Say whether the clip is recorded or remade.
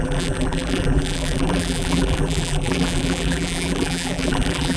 remade